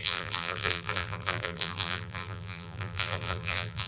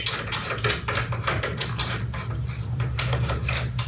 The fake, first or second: first